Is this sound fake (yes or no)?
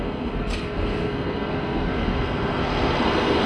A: yes